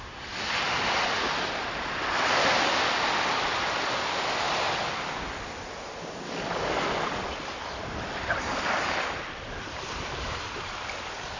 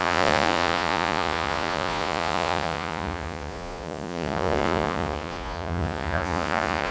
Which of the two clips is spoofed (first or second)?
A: second